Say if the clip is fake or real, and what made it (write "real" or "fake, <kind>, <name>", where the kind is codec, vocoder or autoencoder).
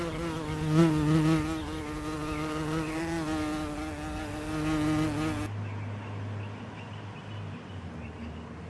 real